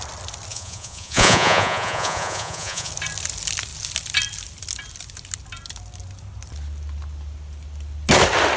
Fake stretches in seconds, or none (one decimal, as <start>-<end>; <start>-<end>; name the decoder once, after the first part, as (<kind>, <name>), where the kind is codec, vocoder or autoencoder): 0.5-2.9 (vocoder, Vocos)

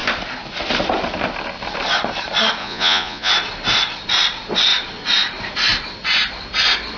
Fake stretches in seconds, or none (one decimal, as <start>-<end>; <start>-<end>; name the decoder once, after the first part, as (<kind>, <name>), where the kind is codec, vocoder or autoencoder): 2.6-3.3 (vocoder, Vocos)

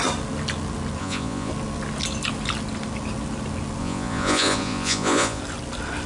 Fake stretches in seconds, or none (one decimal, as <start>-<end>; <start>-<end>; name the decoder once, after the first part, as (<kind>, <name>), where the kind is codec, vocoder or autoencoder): 1.0-1.5 (vocoder, Vocos); 3.8-5.4

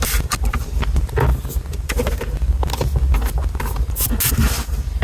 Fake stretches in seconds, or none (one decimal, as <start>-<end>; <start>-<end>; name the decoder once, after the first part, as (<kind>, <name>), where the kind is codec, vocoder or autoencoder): none

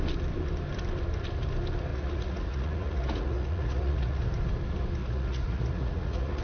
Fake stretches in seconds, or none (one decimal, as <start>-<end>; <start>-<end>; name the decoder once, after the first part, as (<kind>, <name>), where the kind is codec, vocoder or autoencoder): 1.9-4.2 (vocoder, Vocos); 5.0-6.4

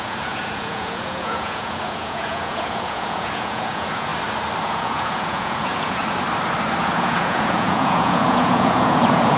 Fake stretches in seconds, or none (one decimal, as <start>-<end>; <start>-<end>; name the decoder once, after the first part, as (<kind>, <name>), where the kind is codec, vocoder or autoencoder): 0.0-4.1 (vocoder, Vocos); 4.6-6.0; 6.8-9.4

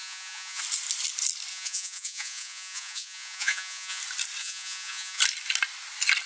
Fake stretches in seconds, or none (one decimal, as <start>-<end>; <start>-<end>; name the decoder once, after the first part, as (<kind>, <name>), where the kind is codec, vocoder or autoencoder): 0.0-0.6 (vocoder, Vocos); 1.5-4.0; 4.4-5.2

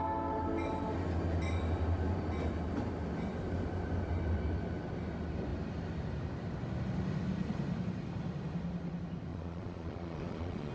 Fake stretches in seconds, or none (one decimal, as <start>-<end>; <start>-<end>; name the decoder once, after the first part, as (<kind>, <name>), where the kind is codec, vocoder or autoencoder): 9.3-10.7 (vocoder, Vocos)